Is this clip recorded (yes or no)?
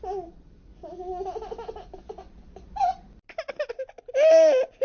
yes